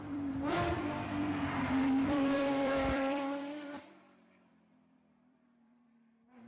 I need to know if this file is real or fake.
fake